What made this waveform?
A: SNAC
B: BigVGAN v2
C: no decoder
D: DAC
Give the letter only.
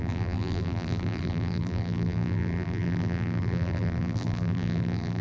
B